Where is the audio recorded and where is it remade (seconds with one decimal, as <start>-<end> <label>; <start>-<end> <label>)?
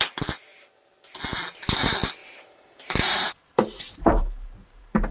0.0-2.2 recorded; 2.2-5.1 remade